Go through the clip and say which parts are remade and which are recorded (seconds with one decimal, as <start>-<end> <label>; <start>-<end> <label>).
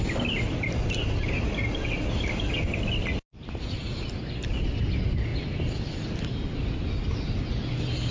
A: 0.0-8.1 recorded